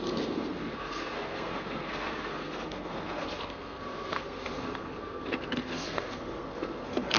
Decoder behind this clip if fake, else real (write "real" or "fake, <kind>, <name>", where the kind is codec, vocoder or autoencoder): fake, codec, SNAC